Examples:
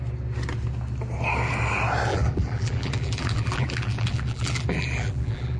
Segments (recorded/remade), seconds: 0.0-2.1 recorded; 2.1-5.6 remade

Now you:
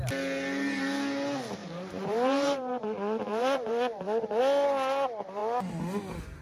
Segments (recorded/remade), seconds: 0.0-1.6 recorded; 1.6-4.4 remade; 4.4-6.4 recorded

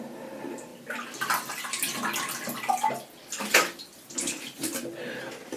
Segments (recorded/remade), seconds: 0.0-5.6 recorded

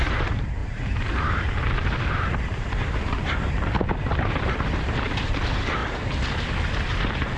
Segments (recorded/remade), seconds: 0.0-5.8 remade; 5.8-6.7 recorded; 6.7-7.4 remade

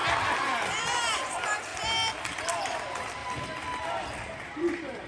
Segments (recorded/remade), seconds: 0.0-0.8 recorded; 0.8-1.7 remade; 1.7-2.6 recorded; 2.6-3.2 remade; 3.2-4.1 recorded; 4.1-5.1 remade

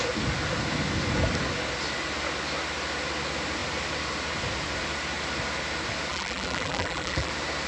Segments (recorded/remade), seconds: 0.0-6.1 recorded; 6.1-7.3 remade; 7.3-7.7 recorded